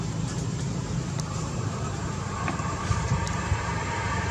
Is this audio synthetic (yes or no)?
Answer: yes